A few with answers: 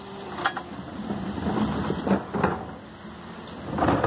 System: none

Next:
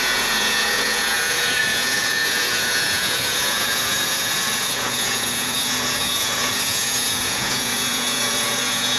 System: vocoder, Vocos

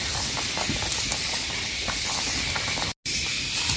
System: none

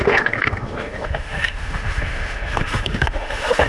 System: autoencoder, DAC-VAE